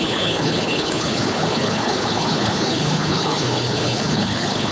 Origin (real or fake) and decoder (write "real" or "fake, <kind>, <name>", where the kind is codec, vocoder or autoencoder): fake, codec, HILCodec